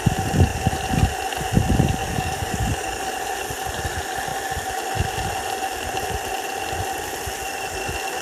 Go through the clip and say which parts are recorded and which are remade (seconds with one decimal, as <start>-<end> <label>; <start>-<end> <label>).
0.0-2.0 recorded; 2.0-3.1 remade; 3.1-8.2 recorded